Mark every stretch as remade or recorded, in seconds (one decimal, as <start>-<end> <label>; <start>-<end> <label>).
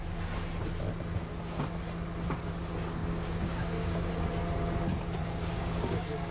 0.0-3.0 recorded; 3.0-4.1 remade; 4.1-5.2 recorded; 5.2-6.3 remade